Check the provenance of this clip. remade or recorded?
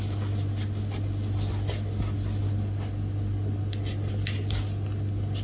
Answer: recorded